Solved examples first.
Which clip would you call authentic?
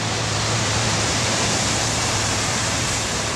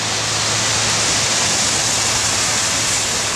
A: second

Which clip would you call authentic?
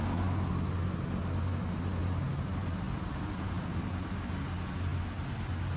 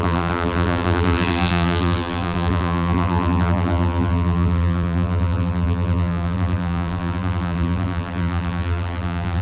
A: first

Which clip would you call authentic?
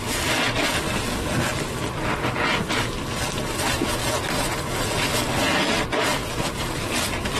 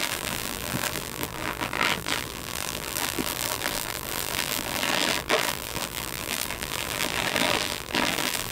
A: first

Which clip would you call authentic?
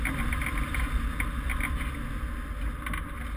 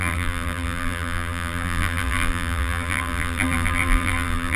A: first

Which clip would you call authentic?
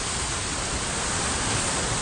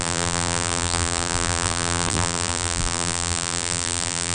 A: first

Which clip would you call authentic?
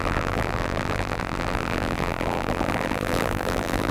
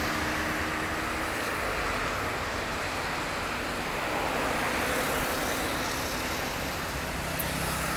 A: second